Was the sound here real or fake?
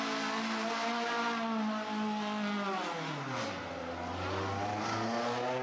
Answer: real